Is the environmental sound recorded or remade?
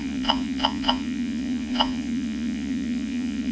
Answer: remade